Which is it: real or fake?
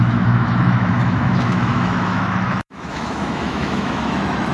fake